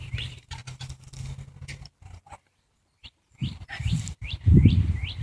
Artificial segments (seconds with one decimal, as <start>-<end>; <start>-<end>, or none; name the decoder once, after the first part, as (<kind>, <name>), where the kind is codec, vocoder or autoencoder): 0.0-0.6 (vocoder, BigVGAN v2); 2.4-5.2